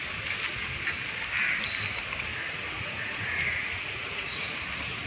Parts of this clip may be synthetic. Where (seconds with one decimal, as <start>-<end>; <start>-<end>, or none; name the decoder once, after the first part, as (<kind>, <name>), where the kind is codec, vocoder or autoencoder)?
2.3-4.5 (vocoder, Vocos)